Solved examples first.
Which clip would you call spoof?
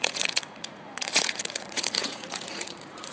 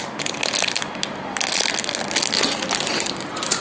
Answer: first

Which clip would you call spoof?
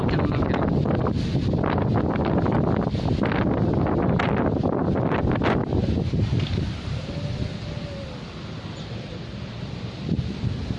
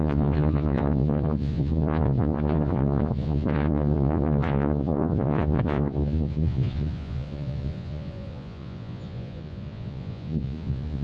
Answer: second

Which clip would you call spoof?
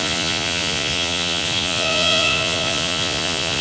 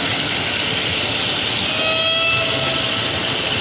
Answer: first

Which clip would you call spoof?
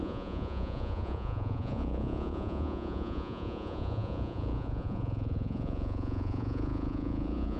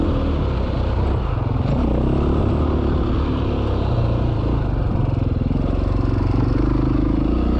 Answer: first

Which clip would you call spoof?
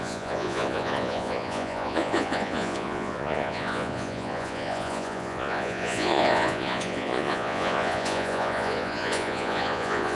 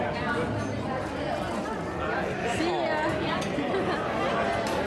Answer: first